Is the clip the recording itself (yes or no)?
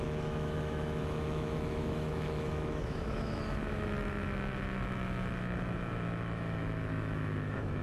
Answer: no